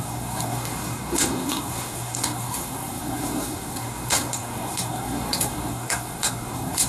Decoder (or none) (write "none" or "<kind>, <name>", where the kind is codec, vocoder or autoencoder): codec, SNAC